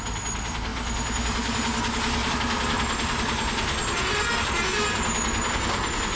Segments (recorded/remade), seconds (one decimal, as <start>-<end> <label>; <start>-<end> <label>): 0.0-6.2 recorded